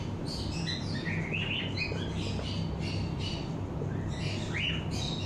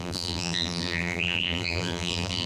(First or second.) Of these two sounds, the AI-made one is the second